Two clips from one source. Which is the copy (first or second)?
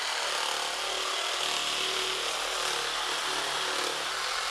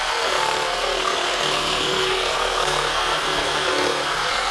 second